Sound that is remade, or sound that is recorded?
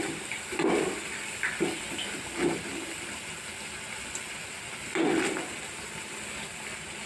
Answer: recorded